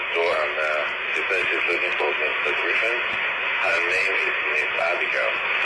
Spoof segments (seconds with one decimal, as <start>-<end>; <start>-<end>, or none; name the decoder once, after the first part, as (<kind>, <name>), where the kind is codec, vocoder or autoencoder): none